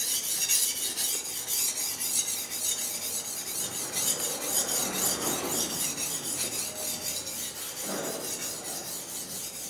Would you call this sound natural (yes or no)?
yes